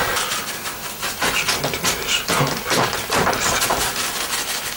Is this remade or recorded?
recorded